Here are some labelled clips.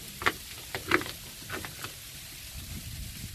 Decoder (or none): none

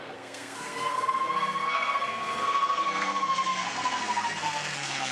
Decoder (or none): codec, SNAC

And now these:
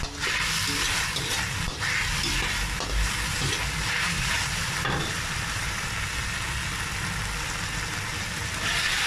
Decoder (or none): none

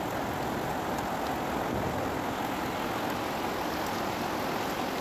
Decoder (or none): none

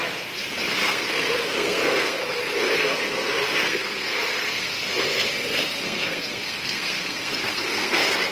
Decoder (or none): codec, SNAC